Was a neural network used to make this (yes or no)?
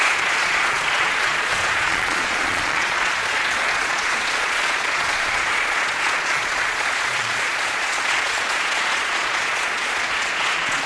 yes